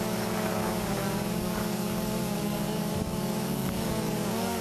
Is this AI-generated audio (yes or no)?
yes